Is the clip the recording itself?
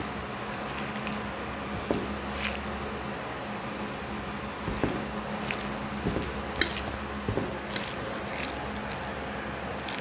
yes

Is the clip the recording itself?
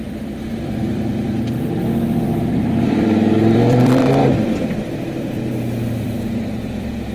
no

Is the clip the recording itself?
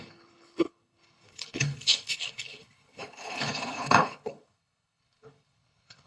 no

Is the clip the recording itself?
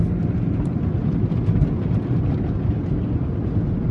yes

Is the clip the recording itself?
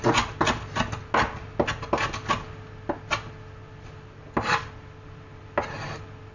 yes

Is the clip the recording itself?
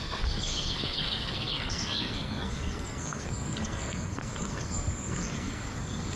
no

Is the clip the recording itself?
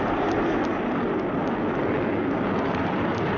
yes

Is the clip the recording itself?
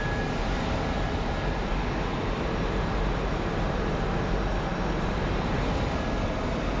yes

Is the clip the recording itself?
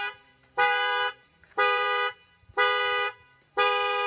no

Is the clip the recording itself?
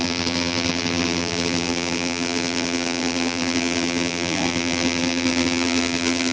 no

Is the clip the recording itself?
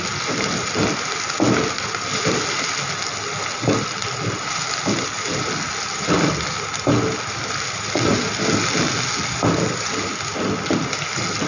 yes